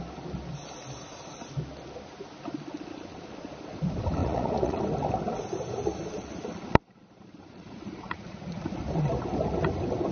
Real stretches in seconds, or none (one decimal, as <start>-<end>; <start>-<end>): 0.0-4.2; 4.8-7.4; 8.7-10.1